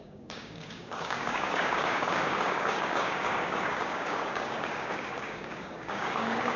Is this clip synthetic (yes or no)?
yes